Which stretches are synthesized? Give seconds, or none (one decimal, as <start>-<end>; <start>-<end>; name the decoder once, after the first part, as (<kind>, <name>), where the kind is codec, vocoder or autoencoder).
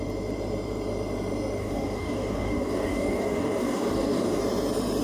1.6-4.4 (codec, DAC)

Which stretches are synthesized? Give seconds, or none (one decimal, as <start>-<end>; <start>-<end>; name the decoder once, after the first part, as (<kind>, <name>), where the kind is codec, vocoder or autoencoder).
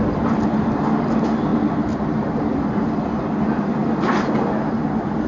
none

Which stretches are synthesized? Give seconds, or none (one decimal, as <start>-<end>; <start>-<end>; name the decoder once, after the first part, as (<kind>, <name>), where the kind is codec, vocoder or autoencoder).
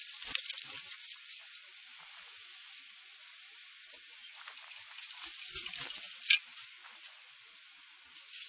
none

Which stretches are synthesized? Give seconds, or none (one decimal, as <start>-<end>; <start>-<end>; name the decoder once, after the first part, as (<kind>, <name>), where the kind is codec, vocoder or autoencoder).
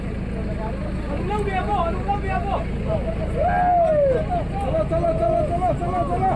none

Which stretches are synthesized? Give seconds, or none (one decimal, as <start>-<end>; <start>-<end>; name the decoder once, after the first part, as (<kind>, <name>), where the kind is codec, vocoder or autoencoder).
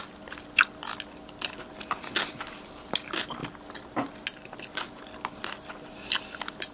none